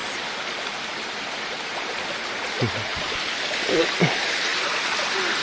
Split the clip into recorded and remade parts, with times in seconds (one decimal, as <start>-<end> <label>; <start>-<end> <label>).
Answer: 0.0-5.4 recorded